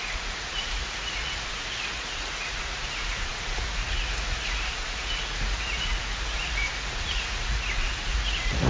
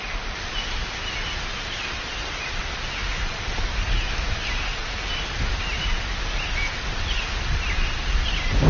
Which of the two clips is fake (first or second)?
first